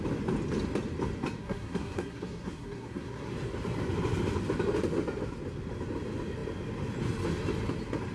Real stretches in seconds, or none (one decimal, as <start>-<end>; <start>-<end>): 0.0-1.4; 3.3-8.1